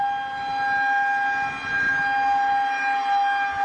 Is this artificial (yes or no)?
no